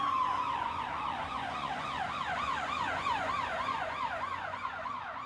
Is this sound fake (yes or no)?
yes